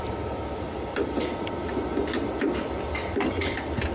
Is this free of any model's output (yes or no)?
yes